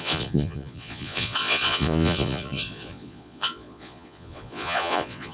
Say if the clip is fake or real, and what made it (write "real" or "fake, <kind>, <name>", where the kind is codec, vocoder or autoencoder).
fake, vocoder, Vocos